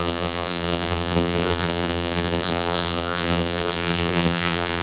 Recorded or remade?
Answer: remade